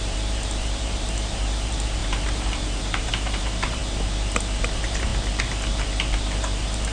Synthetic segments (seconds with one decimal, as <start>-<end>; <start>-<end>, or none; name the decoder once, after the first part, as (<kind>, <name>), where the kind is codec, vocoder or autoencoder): 0.0-3.8 (vocoder, BigVGAN v2); 4.6-5.1; 6.4-6.9